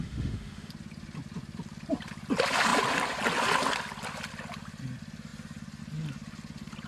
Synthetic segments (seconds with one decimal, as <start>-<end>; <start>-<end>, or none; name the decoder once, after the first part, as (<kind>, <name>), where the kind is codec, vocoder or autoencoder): 0.0-0.7 (autoencoder, DAC-VAE)